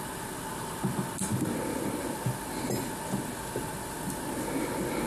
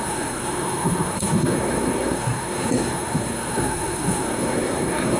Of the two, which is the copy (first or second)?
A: second